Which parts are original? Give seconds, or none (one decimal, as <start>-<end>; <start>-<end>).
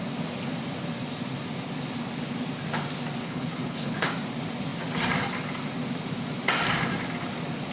0.0-3.2; 4.1-7.7